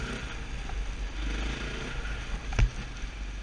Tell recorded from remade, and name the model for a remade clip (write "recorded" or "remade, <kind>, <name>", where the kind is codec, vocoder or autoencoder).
recorded